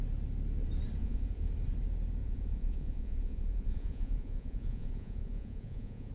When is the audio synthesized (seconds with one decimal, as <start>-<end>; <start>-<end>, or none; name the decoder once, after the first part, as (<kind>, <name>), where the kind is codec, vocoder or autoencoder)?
1.0-1.5 (vocoder, Vocos); 2.2-6.1